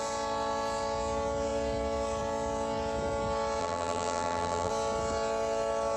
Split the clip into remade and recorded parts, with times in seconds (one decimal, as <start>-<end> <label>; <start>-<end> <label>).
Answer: 0.0-3.6 recorded; 3.6-4.7 remade; 4.7-6.0 recorded